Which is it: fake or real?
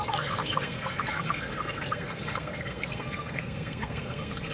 fake